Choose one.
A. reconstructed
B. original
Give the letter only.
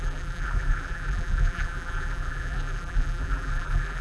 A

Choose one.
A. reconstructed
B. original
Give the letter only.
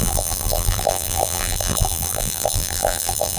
A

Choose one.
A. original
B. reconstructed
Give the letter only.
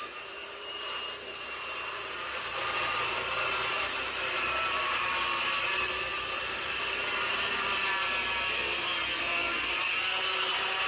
B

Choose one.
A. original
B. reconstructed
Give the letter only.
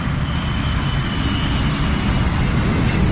A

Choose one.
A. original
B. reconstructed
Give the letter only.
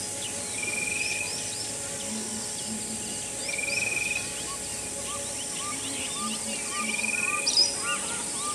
A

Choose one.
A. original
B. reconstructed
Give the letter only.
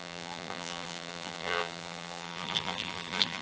B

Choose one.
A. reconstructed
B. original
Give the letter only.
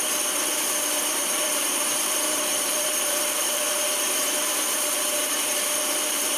A